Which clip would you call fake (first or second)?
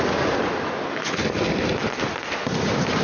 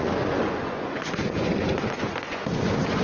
second